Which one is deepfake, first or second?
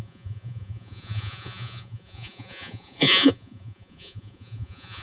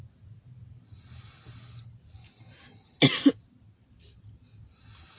first